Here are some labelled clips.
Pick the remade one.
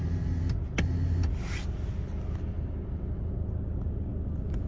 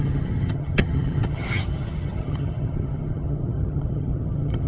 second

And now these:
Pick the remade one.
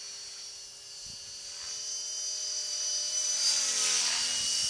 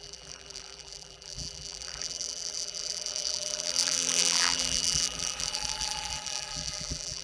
second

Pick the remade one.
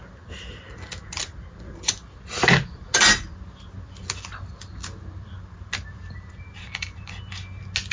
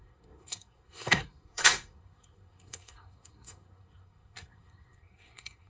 second